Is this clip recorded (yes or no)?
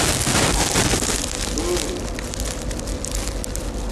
yes